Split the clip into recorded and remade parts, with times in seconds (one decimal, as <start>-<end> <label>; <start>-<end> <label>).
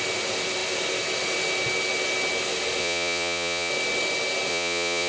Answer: 0.0-2.8 recorded; 2.8-3.7 remade; 3.7-4.5 recorded; 4.5-5.1 remade